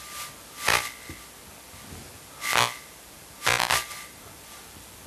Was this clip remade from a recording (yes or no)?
no